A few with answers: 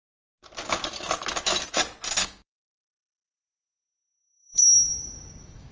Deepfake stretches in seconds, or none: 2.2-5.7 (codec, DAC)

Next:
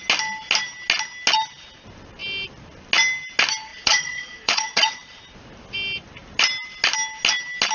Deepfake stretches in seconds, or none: 3.7-5.2 (vocoder, Vocos)

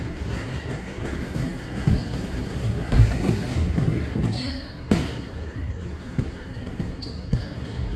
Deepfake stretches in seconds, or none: 0.0-8.0 (codec, SNAC)

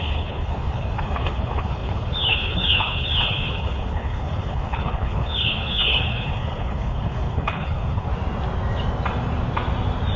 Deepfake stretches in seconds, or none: 0.0-8.1 (codec, HILCodec)

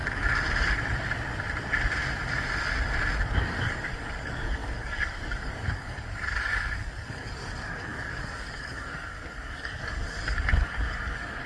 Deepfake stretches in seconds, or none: 3.7-11.5 (codec, DAC)

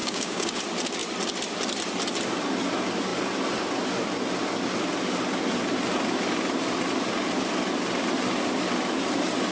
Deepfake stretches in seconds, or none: 0.0-0.6 (codec, DAC)

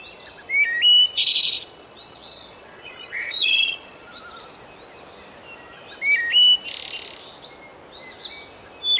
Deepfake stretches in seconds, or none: 1.1-4.2 (vocoder, Vocos)

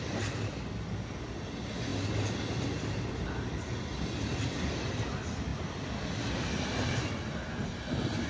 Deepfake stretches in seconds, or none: none